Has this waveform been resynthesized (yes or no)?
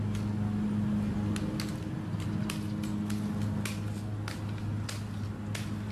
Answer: no